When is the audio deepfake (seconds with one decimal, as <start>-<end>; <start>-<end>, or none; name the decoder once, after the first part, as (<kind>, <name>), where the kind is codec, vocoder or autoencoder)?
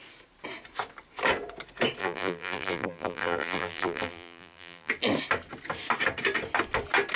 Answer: 2.0-4.9 (vocoder, BigVGAN v2)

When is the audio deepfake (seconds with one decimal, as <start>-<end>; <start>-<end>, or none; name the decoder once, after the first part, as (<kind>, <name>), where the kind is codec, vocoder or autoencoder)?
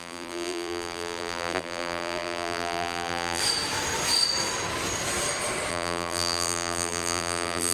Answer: 0.0-3.4 (vocoder, BigVGAN v2); 5.7-7.7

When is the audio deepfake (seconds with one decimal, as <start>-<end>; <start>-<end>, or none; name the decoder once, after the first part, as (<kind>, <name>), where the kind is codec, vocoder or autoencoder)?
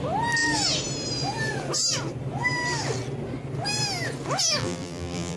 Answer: 4.6-5.4 (vocoder, BigVGAN v2)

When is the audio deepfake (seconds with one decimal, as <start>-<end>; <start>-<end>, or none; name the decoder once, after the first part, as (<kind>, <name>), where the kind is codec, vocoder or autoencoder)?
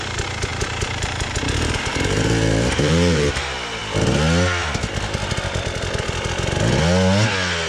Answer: 0.5-3.3 (vocoder, BigVGAN v2)